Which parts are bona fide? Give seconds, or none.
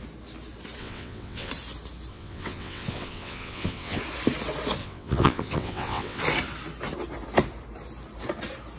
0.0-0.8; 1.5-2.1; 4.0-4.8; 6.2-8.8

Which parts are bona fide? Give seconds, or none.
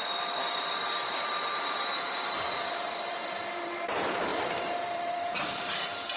none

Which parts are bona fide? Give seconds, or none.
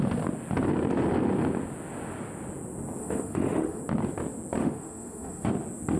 0.0-3.0; 3.8-4.6; 5.5-6.0